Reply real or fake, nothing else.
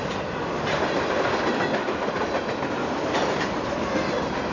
real